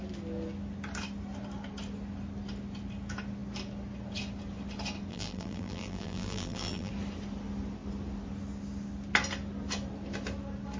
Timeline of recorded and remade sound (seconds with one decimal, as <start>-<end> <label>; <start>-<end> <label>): 0.0-5.1 recorded; 5.1-6.9 remade; 6.9-10.8 recorded